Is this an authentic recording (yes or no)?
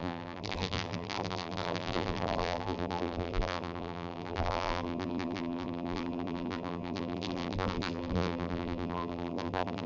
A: no